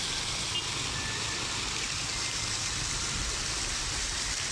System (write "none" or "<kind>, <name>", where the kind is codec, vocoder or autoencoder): none